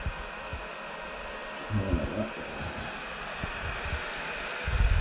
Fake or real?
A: real